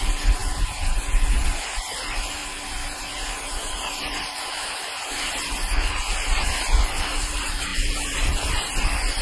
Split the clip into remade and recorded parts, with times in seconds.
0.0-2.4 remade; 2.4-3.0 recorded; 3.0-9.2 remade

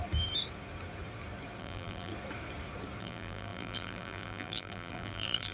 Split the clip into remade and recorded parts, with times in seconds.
0.0-1.6 recorded; 1.6-2.1 remade; 2.1-3.0 recorded; 3.0-5.5 remade